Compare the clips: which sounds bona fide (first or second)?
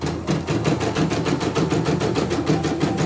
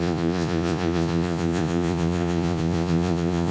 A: first